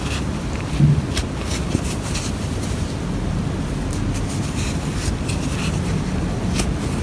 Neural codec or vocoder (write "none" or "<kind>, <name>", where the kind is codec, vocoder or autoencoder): none